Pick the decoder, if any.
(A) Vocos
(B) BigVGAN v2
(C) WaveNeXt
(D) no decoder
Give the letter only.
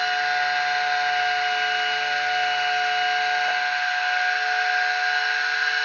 D